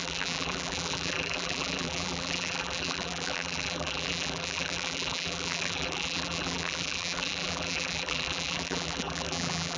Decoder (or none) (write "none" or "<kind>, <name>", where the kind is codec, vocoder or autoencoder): vocoder, BigVGAN v2